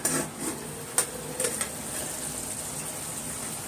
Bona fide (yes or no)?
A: yes